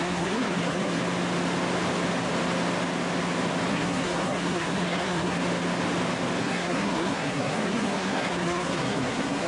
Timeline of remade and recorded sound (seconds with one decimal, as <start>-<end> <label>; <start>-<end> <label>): 0.0-1.0 remade; 1.0-3.7 recorded; 3.7-5.4 remade; 5.4-6.4 recorded; 6.4-9.5 remade